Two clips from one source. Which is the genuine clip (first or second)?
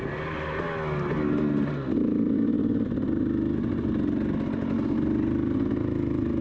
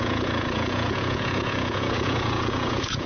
first